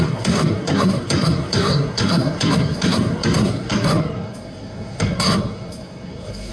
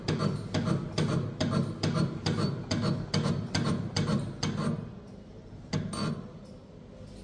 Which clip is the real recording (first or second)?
second